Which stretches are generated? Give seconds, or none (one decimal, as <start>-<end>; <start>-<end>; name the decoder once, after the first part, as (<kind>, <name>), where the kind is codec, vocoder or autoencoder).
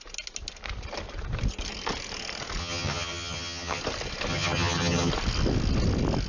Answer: 2.6-3.8 (vocoder, HiFi-GAN); 4.3-5.1